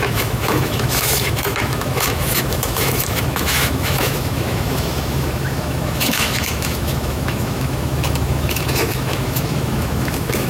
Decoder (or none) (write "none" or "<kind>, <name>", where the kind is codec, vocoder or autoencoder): autoencoder, DAC-VAE